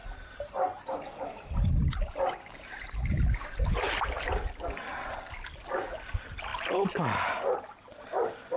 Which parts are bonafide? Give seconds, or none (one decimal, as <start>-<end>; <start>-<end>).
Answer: 0.0-8.6